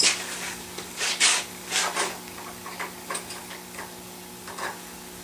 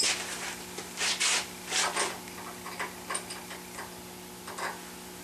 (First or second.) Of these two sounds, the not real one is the first